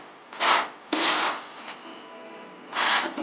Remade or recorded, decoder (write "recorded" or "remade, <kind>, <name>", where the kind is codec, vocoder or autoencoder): recorded